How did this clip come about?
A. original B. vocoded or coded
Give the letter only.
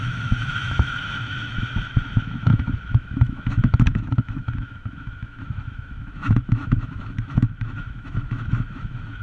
B